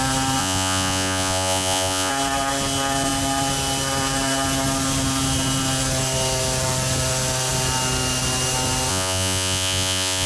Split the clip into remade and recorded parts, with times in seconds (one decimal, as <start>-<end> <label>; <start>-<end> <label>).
0.0-0.4 recorded; 0.4-2.1 remade; 2.1-8.9 recorded; 8.9-10.3 remade